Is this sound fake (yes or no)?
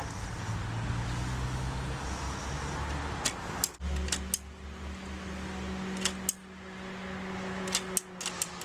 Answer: no